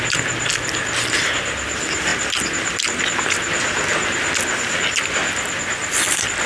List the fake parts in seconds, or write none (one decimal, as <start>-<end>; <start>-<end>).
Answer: none